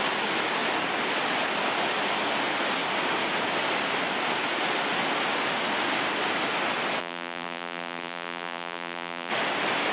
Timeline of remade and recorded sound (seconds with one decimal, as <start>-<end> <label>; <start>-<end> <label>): 0.0-7.0 recorded; 7.0-9.3 remade; 9.3-9.9 recorded